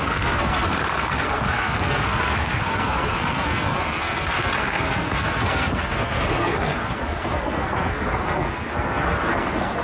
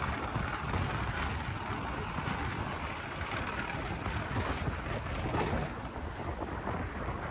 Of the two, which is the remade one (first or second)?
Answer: first